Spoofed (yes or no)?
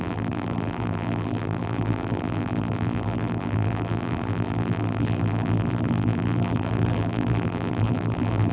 yes